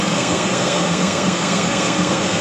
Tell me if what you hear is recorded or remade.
remade